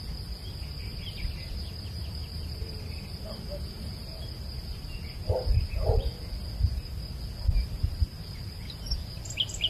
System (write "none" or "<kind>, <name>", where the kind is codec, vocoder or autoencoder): none